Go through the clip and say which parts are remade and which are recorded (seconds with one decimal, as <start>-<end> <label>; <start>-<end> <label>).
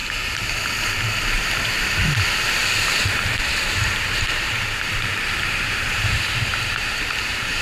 0.0-2.6 recorded; 2.6-7.6 remade